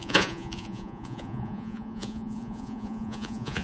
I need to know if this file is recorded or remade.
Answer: remade